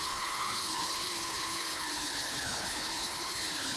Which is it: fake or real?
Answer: fake